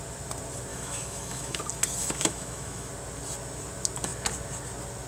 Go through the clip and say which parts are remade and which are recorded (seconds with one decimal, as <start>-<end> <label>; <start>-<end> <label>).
0.0-0.7 recorded; 0.7-1.6 remade; 1.6-2.0 recorded; 2.0-2.9 remade; 2.9-5.1 recorded